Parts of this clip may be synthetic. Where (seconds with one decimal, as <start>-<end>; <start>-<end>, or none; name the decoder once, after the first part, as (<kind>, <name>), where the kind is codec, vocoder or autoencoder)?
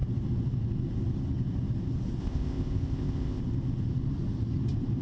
2.2-3.4 (codec, ZipCodec)